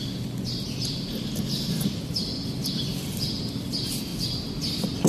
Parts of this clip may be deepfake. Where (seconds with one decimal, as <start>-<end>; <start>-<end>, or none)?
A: 0.0-4.1; 4.6-5.1